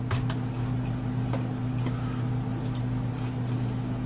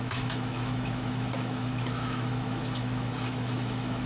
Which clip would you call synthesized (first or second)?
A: second